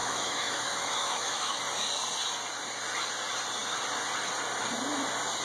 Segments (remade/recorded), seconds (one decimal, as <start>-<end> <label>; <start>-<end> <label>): 0.0-1.6 remade; 1.6-5.4 recorded